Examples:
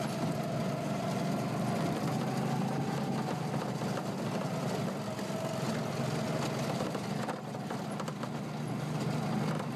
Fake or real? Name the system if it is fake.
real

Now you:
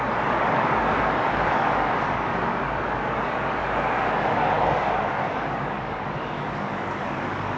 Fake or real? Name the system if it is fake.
fake, codec, DAC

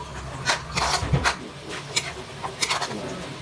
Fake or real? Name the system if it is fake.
real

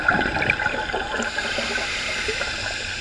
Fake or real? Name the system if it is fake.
real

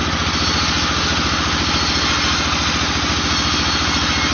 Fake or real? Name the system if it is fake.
real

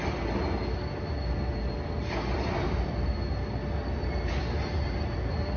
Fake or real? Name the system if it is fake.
real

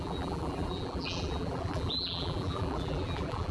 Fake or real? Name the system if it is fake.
fake, vocoder, BigVGAN v2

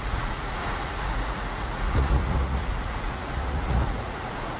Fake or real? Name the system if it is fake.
fake, vocoder, Vocos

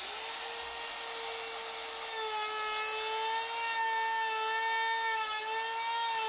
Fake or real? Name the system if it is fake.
real